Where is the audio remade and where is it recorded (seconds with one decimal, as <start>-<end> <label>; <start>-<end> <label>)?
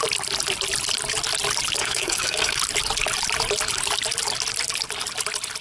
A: 0.0-1.8 recorded; 1.8-2.6 remade; 2.6-5.6 recorded